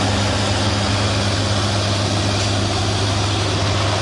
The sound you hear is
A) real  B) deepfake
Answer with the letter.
A